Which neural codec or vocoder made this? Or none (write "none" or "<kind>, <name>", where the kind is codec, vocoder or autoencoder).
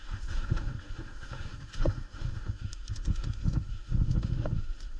autoencoder, DAC-VAE